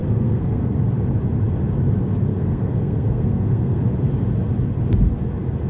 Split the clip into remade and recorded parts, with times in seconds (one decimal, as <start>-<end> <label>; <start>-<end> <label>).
0.0-0.6 remade; 0.6-2.3 recorded; 2.3-3.8 remade; 3.8-5.7 recorded